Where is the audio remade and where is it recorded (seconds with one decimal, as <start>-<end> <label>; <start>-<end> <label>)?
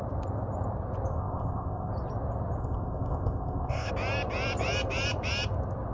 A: 0.0-1.1 recorded; 1.1-1.9 remade; 1.9-2.6 recorded; 2.6-3.9 remade; 3.9-5.9 recorded